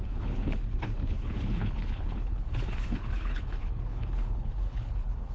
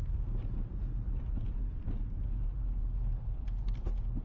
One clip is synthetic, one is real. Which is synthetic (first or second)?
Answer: first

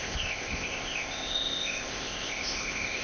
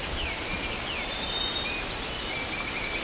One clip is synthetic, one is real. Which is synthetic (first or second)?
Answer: first